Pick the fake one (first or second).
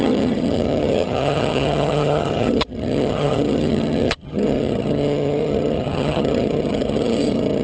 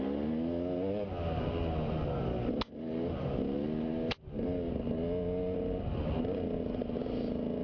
first